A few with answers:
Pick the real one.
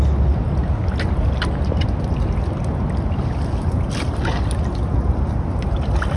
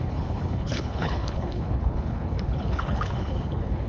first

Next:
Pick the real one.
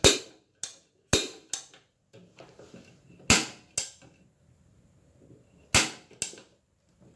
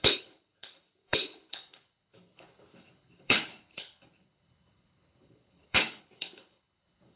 first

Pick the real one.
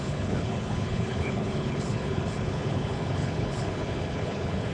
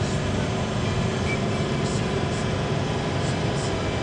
second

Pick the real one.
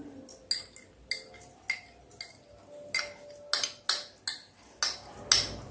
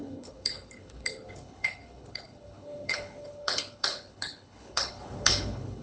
first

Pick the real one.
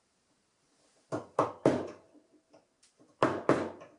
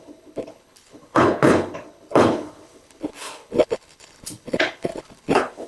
first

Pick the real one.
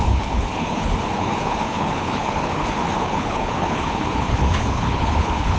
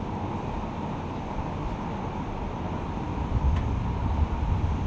second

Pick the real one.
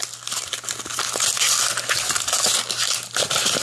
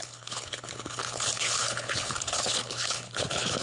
first